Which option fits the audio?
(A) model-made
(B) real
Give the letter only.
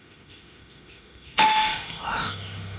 A